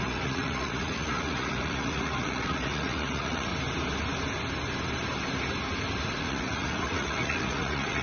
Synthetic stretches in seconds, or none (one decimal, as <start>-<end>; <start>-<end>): 0.0-3.5; 6.2-8.0